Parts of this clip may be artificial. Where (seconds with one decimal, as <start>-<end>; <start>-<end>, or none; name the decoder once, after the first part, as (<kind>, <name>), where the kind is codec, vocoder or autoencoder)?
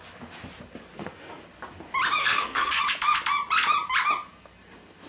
0.9-1.4 (codec, SNAC); 2.2-2.8